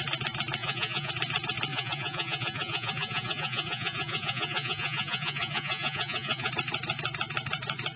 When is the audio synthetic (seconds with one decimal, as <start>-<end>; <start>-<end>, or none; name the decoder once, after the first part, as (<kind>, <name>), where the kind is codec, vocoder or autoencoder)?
0.6-1.1 (vocoder, Vocos); 1.7-6.5